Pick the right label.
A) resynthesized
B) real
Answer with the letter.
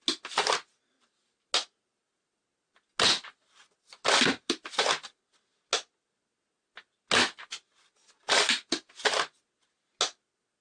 B